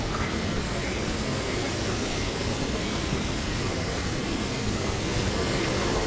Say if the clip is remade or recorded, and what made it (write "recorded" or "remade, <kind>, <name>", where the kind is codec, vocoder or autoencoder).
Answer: remade, codec, SNAC